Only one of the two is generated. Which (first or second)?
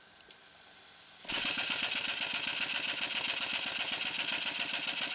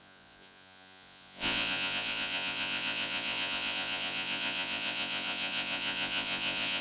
second